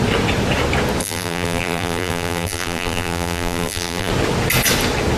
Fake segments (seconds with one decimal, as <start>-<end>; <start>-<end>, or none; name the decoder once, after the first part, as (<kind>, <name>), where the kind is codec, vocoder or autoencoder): 1.0-4.1 (vocoder, BigVGAN v2)